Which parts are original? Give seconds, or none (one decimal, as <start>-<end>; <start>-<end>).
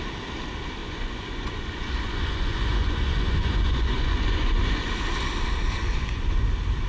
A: 0.0-0.8; 4.9-5.8; 6.5-6.9